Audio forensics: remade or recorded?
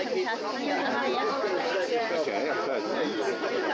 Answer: recorded